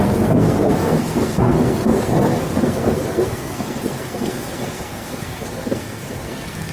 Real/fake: fake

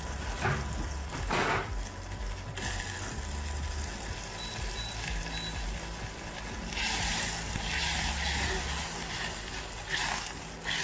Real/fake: real